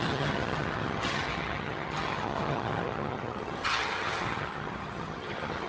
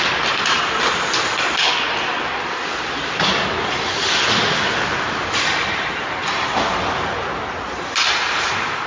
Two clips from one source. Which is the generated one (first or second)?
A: first